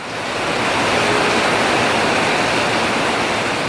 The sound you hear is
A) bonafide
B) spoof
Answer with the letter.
A